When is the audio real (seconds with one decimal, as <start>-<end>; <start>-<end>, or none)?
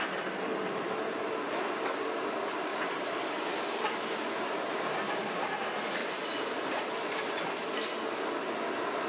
0.0-0.5; 1.1-2.7; 4.0-6.0; 7.8-9.1